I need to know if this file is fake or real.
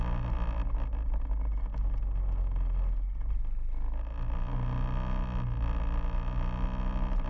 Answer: real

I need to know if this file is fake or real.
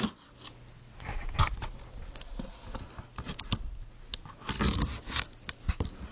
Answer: real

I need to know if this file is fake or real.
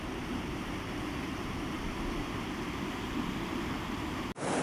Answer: real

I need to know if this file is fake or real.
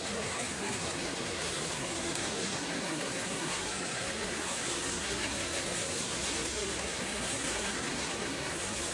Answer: fake